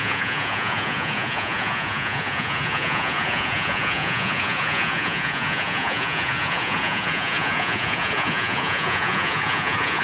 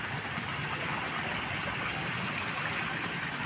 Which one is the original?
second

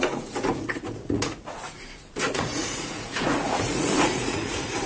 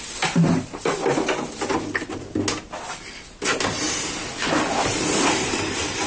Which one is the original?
second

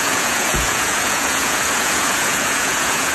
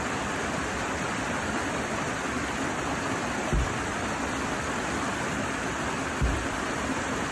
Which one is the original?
second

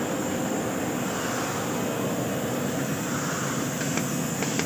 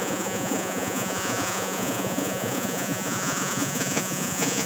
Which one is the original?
first